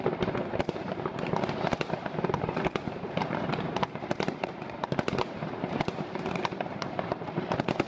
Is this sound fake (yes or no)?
yes